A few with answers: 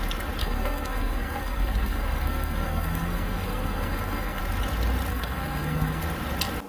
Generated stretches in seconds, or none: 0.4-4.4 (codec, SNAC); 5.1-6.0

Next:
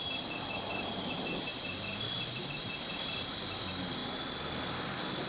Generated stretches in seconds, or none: 0.0-4.0 (vocoder, BigVGAN v2)